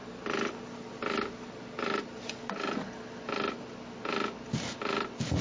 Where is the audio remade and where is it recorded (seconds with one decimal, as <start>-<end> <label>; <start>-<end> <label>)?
0.0-5.4 recorded